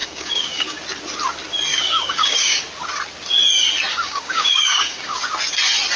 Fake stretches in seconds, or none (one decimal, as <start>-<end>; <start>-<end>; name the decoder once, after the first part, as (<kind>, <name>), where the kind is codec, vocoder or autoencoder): 0.0-0.8 (codec, DAC); 1.7-2.6; 3.9-5.2